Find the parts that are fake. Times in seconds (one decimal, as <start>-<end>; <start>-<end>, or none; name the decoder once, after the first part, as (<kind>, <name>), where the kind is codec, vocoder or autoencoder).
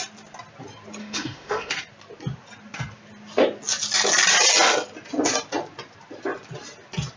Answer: 1.0-1.7 (autoencoder, DAC-VAE)